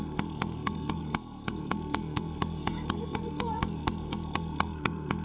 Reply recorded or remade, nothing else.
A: remade